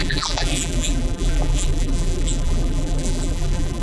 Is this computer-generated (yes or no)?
yes